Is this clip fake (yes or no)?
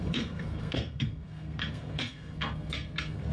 yes